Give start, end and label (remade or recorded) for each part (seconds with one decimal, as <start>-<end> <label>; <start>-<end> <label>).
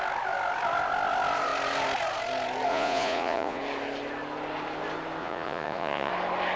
0.0-2.7 recorded; 2.7-3.6 remade; 3.6-5.2 recorded; 5.2-6.1 remade; 6.1-6.6 recorded